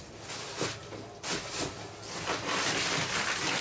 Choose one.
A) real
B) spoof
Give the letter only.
A